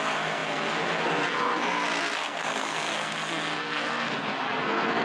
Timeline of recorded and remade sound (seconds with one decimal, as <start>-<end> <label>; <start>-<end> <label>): 0.0-5.0 remade